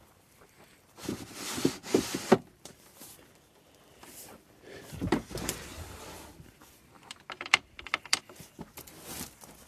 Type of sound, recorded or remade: remade